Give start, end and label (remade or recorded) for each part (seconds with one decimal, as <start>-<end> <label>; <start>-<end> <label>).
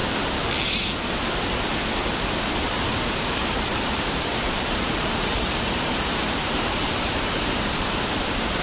0.0-3.7 recorded; 3.7-7.4 remade; 7.4-8.6 recorded